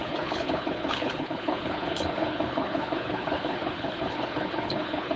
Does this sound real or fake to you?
fake